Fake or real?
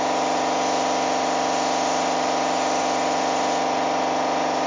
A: real